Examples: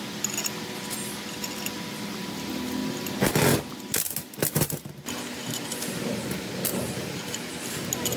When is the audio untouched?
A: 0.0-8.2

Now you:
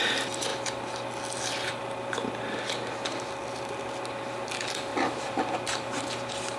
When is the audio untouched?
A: 0.0-4.9; 6.0-6.6

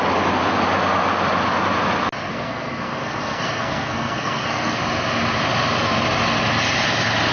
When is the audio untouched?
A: 0.0-2.3; 4.8-7.3

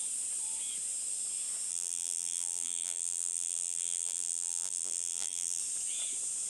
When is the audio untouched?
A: 0.0-1.7; 5.6-6.5